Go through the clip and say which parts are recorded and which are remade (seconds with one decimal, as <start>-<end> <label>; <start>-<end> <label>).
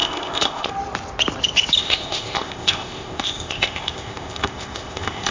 0.0-0.7 remade; 0.7-1.8 recorded; 1.8-5.3 remade